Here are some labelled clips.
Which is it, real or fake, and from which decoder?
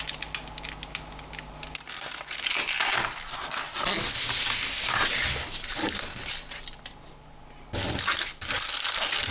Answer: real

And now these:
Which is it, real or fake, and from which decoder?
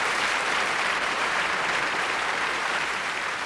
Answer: fake, vocoder, BigVGAN v2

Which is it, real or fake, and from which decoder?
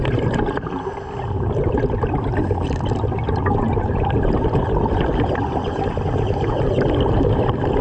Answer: real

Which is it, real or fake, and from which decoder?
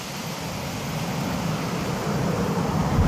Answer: real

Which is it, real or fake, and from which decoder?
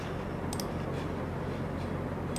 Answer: real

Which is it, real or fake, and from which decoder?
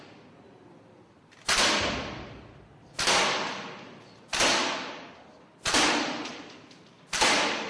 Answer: real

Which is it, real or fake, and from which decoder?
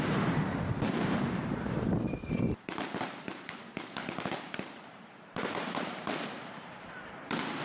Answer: fake, vocoder, BigVGAN v2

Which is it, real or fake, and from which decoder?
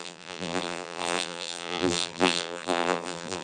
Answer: fake, vocoder, BigVGAN v2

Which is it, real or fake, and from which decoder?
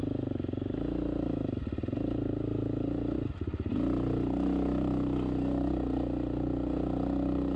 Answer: real